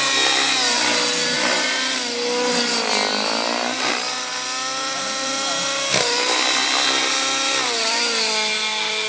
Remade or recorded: recorded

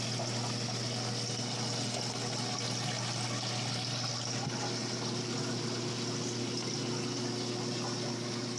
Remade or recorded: recorded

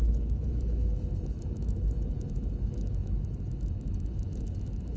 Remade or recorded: remade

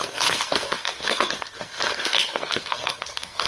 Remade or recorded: remade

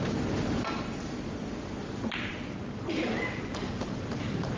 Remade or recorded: remade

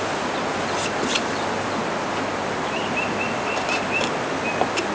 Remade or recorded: recorded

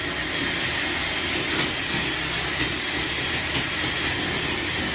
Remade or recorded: recorded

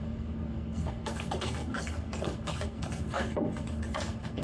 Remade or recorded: remade